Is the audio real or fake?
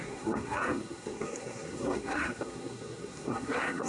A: fake